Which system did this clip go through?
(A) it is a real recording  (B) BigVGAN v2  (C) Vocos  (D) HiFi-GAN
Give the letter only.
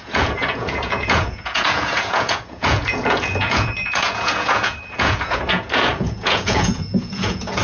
C